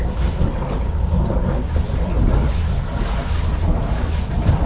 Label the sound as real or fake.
real